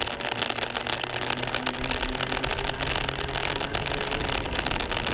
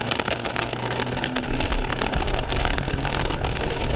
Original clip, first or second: first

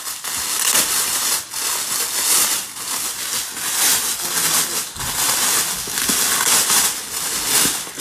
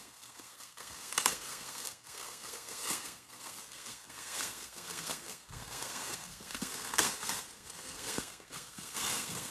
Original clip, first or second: first